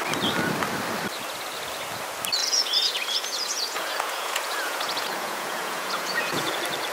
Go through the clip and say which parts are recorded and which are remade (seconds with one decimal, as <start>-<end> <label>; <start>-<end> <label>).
0.0-2.4 recorded; 2.4-6.5 remade; 6.5-6.9 recorded